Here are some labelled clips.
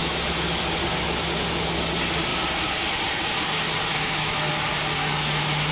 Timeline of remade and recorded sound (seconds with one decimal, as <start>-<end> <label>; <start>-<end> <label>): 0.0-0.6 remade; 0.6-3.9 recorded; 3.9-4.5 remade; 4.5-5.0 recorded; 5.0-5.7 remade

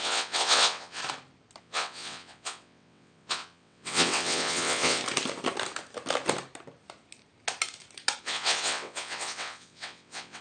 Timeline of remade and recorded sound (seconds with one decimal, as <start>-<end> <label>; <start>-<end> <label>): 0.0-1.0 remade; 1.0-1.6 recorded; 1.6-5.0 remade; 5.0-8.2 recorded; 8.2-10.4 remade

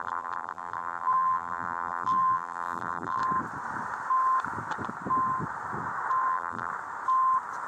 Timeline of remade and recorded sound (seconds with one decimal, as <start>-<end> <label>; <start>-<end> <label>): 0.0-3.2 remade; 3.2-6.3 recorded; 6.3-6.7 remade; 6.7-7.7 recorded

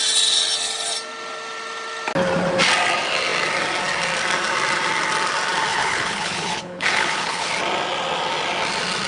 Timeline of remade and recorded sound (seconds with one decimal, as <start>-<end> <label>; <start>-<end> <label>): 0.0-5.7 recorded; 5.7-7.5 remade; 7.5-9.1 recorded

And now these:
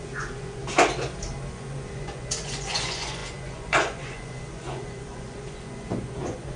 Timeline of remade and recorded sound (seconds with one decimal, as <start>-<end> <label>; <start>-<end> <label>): 0.0-0.6 remade; 0.6-1.5 recorded; 1.5-6.6 remade

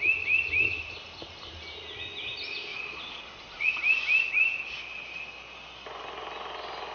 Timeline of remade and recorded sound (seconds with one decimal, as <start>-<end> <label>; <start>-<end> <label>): 0.0-2.7 recorded; 2.7-3.8 remade; 3.8-6.9 recorded

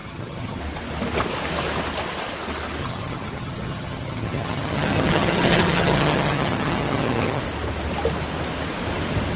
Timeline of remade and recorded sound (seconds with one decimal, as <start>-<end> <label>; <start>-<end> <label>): 0.0-0.6 remade; 0.6-2.8 recorded; 2.8-7.4 remade; 7.4-9.4 recorded